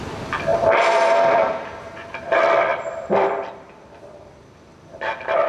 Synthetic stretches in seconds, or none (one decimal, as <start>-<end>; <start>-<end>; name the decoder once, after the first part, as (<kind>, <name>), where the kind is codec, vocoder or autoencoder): 0.0-5.5 (vocoder, BigVGAN v2)